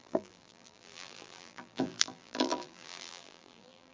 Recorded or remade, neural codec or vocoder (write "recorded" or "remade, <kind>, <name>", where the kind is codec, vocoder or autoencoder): remade, vocoder, BigVGAN v2